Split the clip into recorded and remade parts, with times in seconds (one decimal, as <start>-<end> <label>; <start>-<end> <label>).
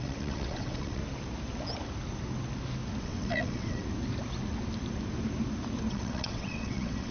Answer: 0.0-1.0 remade; 1.0-3.0 recorded; 3.0-3.8 remade; 3.8-5.9 recorded; 5.9-7.1 remade